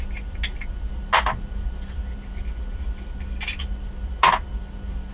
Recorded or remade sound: recorded